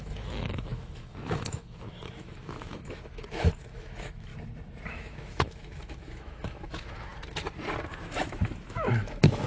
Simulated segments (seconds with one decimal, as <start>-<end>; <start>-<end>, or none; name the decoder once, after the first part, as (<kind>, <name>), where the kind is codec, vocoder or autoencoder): 0.0-4.3 (autoencoder, DAC-VAE); 4.9-7.1; 7.9-9.5